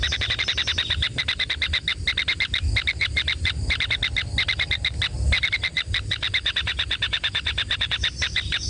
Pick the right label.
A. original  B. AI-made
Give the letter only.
A